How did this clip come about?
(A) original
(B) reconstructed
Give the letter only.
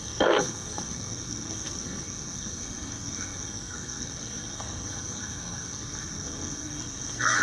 B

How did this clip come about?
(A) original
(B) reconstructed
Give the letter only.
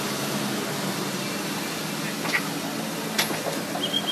A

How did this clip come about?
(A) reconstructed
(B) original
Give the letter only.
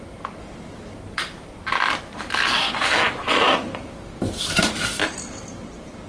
B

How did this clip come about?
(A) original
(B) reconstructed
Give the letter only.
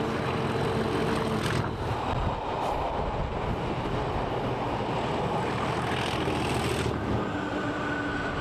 A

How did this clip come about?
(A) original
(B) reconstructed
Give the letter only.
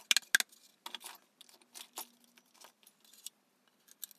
A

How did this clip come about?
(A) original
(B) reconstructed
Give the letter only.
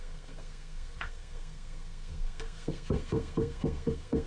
B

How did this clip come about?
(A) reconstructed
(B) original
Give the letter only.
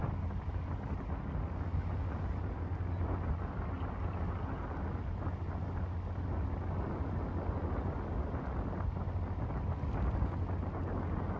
B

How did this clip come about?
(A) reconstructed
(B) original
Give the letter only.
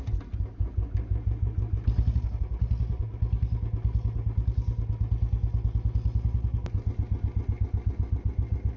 B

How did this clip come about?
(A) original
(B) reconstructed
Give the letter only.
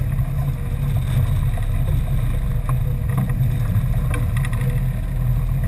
A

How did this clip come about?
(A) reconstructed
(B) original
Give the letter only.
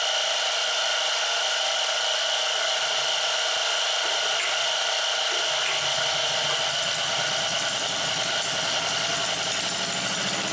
B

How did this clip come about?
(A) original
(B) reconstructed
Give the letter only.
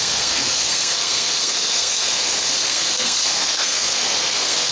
B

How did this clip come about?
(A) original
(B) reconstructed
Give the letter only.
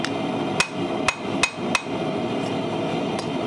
A